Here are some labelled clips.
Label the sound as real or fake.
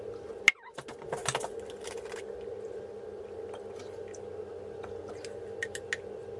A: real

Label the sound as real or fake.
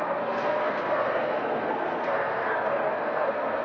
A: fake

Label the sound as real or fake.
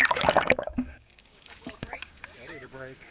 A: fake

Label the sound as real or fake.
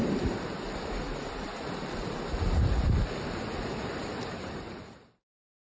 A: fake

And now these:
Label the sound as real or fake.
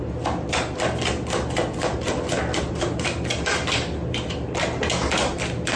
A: real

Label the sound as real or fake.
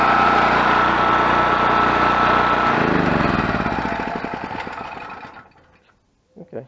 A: real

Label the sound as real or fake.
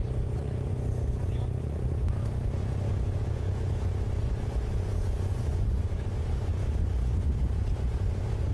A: fake